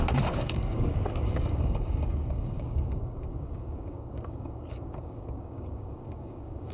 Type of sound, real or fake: fake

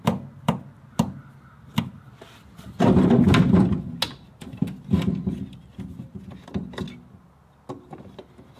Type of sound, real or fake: real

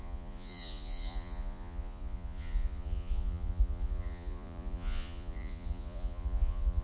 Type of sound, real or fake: fake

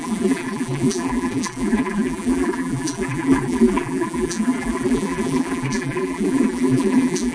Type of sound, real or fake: fake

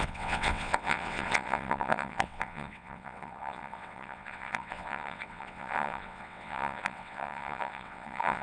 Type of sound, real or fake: fake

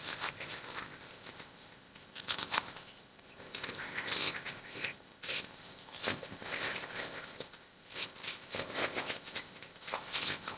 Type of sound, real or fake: fake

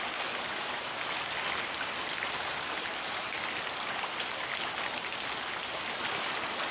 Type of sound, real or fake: real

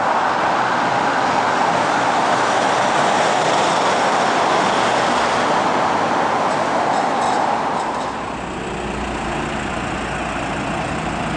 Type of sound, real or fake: real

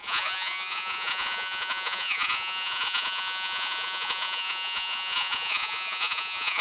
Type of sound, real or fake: fake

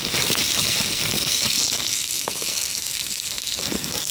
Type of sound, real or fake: fake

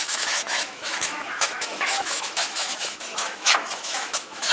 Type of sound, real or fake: fake